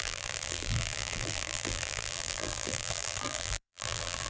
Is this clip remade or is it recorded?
remade